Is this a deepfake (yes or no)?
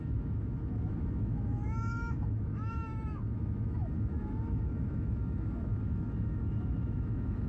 yes